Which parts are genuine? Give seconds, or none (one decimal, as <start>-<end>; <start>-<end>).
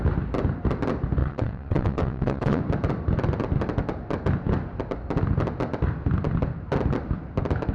0.0-1.2; 2.6-7.7